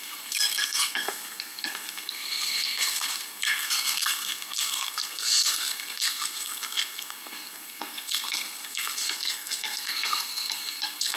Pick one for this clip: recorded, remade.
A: remade